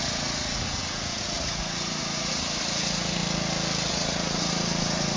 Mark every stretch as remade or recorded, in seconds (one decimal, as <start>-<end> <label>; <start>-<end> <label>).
0.0-3.2 remade; 3.2-3.9 recorded; 3.9-5.2 remade